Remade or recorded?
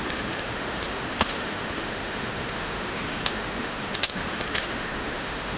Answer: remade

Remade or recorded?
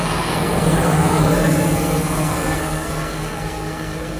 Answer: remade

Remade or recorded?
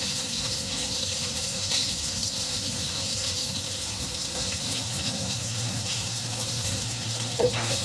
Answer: remade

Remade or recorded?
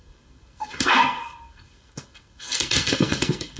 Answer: remade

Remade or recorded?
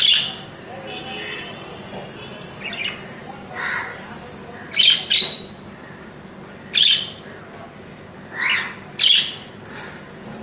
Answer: recorded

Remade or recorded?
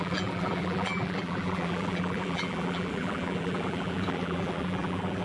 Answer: remade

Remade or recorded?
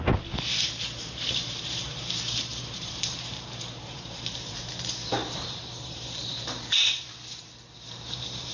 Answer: remade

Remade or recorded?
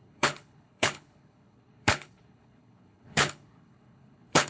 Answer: remade